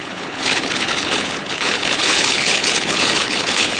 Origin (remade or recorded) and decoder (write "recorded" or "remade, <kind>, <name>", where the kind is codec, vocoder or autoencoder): remade, codec, HILCodec